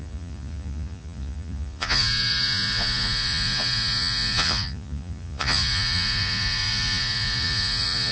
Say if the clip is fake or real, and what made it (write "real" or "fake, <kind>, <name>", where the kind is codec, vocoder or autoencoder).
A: fake, vocoder, Vocos